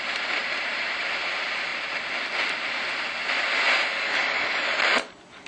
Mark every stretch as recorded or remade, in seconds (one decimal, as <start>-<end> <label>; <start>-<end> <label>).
0.0-0.4 recorded; 0.4-1.0 remade; 1.0-5.5 recorded